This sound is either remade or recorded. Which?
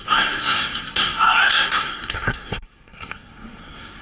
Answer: remade